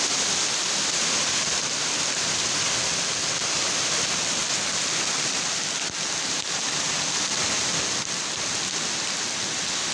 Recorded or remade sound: recorded